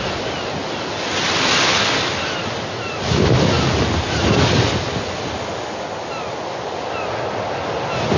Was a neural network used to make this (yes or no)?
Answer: no